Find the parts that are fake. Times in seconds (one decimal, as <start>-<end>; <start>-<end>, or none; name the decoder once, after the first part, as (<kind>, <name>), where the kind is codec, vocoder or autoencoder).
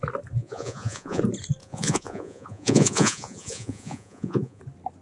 0.4-1.2 (vocoder, Vocos); 1.6-4.6